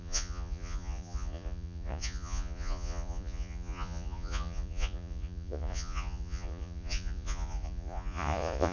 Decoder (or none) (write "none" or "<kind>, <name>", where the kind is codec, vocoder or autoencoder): vocoder, Vocos